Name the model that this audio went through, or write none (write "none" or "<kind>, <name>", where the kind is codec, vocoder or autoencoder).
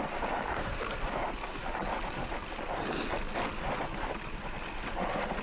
none